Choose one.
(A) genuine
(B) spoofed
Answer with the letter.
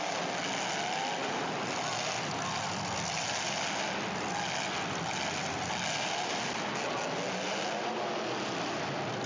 A